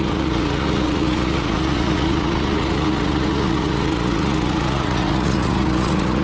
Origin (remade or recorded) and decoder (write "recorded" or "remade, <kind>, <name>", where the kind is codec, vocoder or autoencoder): remade, vocoder, Vocos